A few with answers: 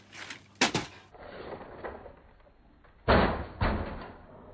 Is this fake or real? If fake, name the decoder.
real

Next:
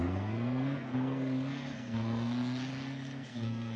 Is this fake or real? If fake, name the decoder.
fake, codec, SNAC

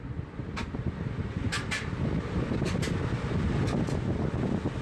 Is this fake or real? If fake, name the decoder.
real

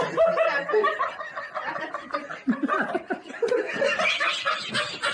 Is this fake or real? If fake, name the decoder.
real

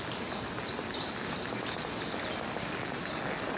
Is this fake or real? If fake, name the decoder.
real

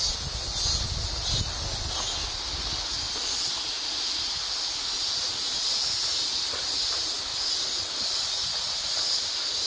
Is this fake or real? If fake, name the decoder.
real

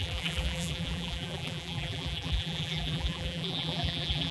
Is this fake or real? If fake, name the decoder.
fake, vocoder, BigVGAN v2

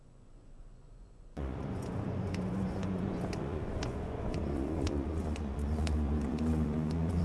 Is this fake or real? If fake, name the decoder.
fake, vocoder, Vocos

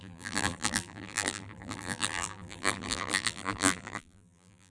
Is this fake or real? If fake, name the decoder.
fake, vocoder, BigVGAN v2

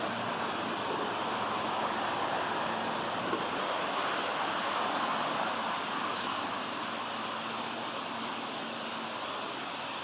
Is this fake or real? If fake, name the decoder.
real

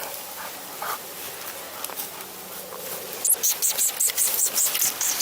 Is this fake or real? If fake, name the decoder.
real